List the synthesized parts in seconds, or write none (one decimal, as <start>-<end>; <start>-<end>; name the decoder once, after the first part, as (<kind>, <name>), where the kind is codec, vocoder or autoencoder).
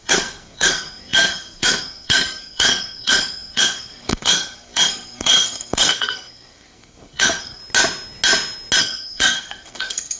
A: 0.0-7.6 (codec, SNAC); 8.8-10.2